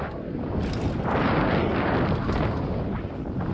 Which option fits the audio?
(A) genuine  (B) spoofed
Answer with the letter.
A